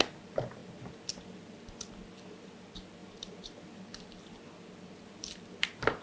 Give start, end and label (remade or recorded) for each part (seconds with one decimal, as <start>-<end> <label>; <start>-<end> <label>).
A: 0.0-6.0 recorded